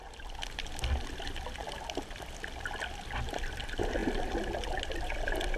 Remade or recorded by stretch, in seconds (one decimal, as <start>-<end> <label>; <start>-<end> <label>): 0.0-5.6 recorded